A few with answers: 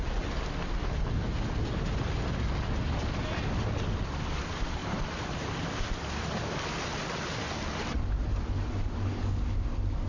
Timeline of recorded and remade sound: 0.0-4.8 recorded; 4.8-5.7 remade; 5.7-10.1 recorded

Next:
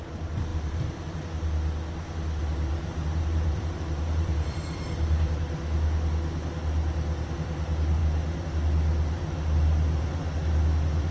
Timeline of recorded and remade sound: 0.0-0.5 recorded; 0.5-1.3 remade; 1.3-2.4 recorded; 2.4-5.4 remade; 5.4-11.1 recorded

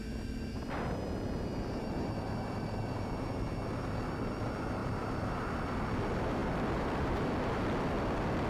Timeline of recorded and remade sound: 0.0-4.8 recorded; 4.8-5.8 remade; 5.8-6.4 recorded; 6.4-7.3 remade; 7.3-8.5 recorded

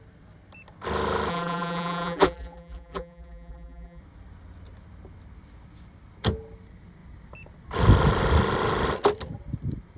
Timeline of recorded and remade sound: 0.0-1.3 recorded; 1.3-4.0 remade; 4.0-10.0 recorded

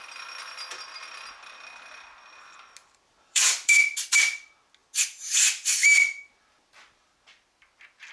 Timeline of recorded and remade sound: 0.0-2.8 recorded; 2.8-3.8 remade; 3.8-8.1 recorded